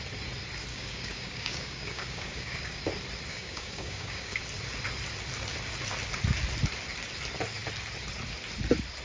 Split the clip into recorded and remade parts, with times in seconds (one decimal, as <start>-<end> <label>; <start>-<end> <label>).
0.0-0.7 recorded; 0.7-2.8 remade; 2.8-3.3 recorded; 3.3-4.4 remade; 4.4-9.0 recorded